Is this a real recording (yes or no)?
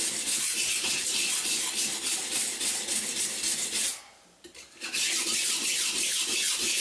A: yes